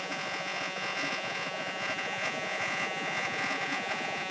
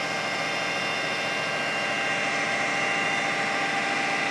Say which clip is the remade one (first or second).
first